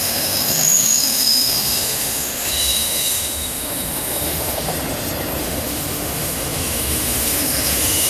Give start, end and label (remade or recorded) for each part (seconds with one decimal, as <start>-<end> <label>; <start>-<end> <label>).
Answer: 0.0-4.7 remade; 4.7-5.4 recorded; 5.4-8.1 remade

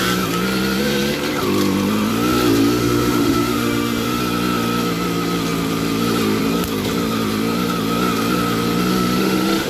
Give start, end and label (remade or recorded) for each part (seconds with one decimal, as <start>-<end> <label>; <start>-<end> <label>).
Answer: 0.0-2.8 recorded; 2.8-4.2 remade; 4.2-8.9 recorded; 8.9-9.7 remade

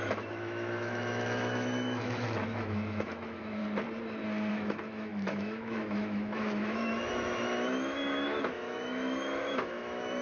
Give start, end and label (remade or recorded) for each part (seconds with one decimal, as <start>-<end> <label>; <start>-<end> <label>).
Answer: 0.0-3.6 remade; 3.6-4.5 recorded; 4.5-10.2 remade